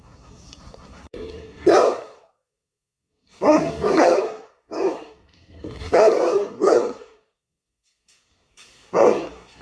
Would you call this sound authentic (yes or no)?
no